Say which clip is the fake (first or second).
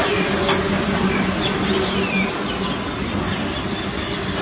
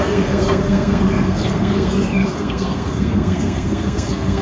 second